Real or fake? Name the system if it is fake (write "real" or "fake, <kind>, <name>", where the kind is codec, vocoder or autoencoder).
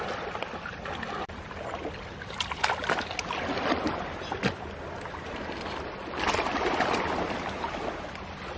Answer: real